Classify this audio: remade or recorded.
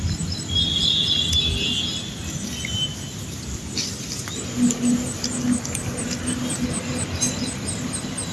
recorded